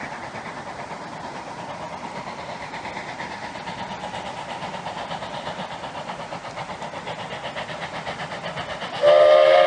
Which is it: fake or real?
real